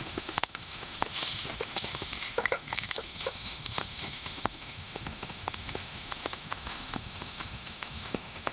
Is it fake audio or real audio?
fake